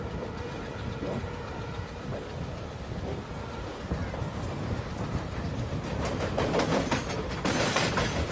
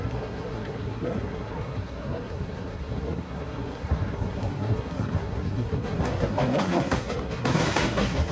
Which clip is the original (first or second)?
first